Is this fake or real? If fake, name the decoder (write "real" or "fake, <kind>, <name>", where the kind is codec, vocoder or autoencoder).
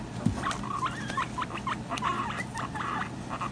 real